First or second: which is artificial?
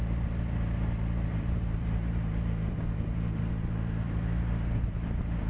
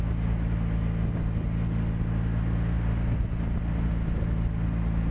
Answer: first